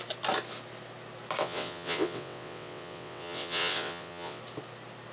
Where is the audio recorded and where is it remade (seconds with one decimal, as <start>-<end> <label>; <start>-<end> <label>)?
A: 0.0-1.4 recorded; 1.4-4.4 remade; 4.4-5.1 recorded

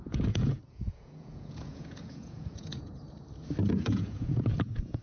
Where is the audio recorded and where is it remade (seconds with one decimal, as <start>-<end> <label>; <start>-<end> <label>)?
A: 0.0-2.9 remade; 2.9-3.7 recorded; 3.7-5.0 remade

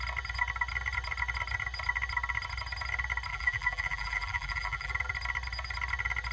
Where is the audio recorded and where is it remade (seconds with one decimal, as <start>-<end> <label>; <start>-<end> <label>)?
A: 0.0-3.3 recorded; 3.3-4.9 remade; 4.9-6.3 recorded

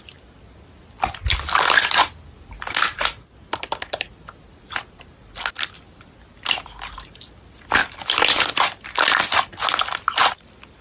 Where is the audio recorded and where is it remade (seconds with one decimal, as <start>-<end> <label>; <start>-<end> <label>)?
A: 0.0-10.8 recorded